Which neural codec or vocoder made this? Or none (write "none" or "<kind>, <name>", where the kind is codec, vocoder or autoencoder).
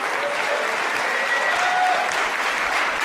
none